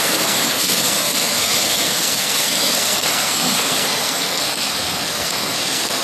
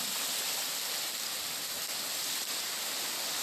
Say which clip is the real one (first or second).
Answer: second